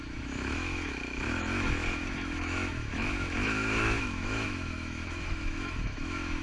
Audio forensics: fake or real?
fake